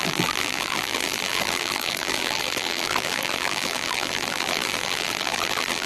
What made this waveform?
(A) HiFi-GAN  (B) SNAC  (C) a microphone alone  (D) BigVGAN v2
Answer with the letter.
D